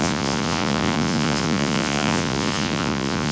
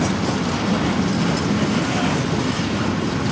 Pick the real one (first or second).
second